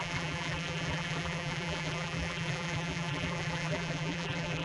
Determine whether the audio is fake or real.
fake